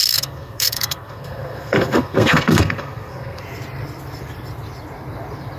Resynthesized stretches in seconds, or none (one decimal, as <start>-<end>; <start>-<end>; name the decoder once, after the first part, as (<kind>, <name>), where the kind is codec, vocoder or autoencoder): 0.0-3.4 (codec, SNAC)